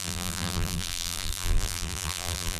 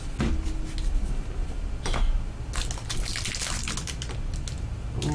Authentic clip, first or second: second